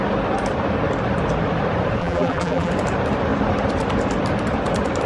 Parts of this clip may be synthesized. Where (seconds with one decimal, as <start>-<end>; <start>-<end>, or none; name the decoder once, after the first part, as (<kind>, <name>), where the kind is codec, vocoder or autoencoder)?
2.0-2.7 (vocoder, BigVGAN v2)

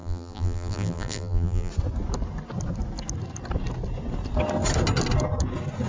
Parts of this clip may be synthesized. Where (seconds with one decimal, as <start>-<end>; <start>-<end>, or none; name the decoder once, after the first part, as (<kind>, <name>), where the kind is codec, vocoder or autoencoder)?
0.0-1.7 (vocoder, BigVGAN v2)

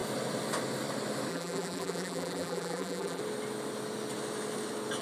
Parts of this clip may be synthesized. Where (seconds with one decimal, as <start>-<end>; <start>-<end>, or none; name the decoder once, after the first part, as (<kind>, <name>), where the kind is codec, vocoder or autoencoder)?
1.3-3.2 (vocoder, BigVGAN v2)

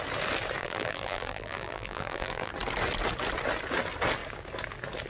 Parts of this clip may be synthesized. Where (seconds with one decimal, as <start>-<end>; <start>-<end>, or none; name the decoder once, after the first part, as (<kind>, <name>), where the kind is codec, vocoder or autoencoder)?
0.6-2.5 (vocoder, BigVGAN v2)

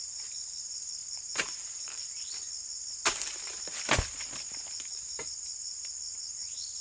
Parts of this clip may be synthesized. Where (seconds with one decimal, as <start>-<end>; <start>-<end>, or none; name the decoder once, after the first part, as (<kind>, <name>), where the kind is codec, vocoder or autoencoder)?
1.0-2.3 (vocoder, BigVGAN v2)